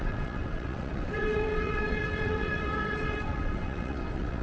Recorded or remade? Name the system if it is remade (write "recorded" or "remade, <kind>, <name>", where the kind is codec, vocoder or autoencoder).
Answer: remade, vocoder, WaveNeXt